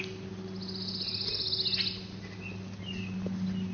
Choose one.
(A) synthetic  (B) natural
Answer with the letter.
B